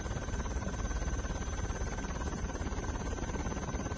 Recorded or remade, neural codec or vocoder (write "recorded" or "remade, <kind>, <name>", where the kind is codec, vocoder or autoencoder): remade, vocoder, BigVGAN v2